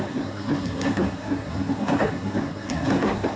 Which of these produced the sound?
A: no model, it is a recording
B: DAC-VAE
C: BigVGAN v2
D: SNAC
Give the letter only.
D